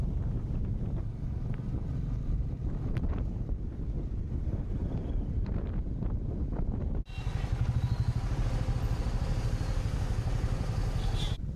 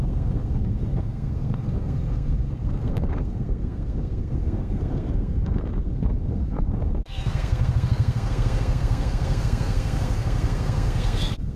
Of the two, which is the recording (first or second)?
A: first